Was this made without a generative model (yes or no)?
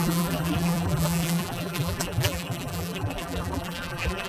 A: no